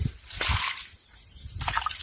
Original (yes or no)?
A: yes